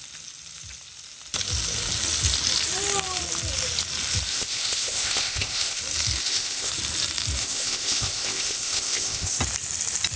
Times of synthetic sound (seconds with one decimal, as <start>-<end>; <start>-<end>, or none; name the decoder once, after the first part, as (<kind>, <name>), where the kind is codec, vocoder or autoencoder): 4.3-5.8 (codec, ZipCodec); 6.2-6.7; 7.4-9.4